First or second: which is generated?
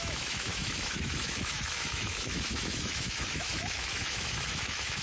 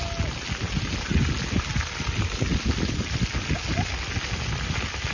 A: first